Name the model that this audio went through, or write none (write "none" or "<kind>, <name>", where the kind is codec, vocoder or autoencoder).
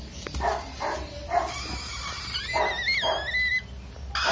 none